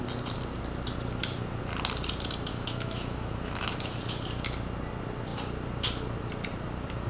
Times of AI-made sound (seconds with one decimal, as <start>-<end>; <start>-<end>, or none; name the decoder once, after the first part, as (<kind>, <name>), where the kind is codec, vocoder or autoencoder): 2.5-4.0 (autoencoder, DAC-VAE)